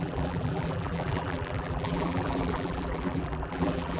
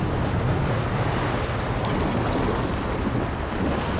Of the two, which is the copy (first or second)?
first